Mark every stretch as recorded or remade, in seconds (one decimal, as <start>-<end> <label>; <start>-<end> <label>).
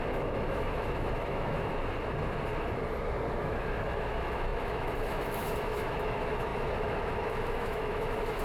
0.0-1.7 remade; 1.7-3.3 recorded; 3.3-8.4 remade